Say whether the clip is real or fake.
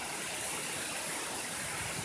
real